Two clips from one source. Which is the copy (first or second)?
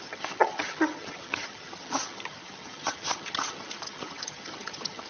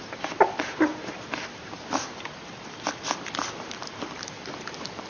first